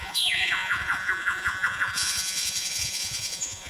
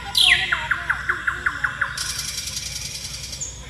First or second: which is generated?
first